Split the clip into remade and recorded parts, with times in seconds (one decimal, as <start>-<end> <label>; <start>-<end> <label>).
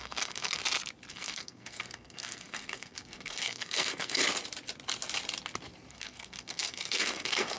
0.0-0.6 remade; 0.6-1.1 recorded; 1.1-4.2 remade; 4.2-5.9 recorded; 5.9-7.6 remade